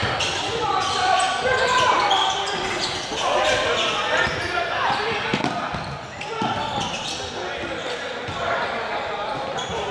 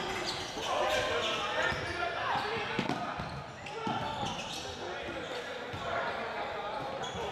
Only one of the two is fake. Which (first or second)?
first